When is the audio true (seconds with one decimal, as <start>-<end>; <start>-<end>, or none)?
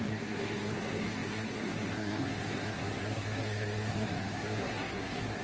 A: none